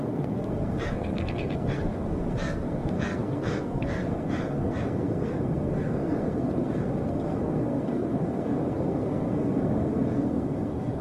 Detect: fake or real fake